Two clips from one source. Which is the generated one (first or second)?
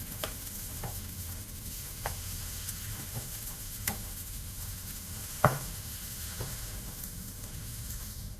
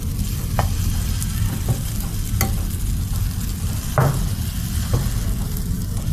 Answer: first